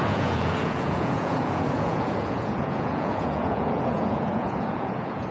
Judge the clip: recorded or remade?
remade